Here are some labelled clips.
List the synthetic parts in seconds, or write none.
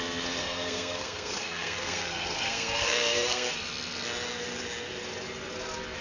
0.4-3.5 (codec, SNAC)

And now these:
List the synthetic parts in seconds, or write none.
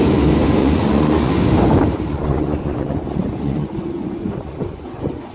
0.6-1.3 (vocoder, Vocos); 2.1-5.3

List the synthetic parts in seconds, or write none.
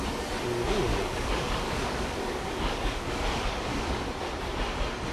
0.9-4.0 (codec, DAC)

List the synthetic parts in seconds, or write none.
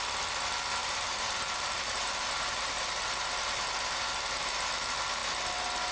0.8-4.3 (vocoder, BigVGAN v2)